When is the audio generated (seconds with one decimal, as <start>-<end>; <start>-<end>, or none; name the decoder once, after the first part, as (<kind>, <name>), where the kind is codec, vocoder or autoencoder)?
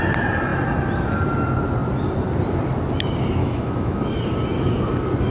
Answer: 3.4-4.2 (autoencoder, DAC-VAE)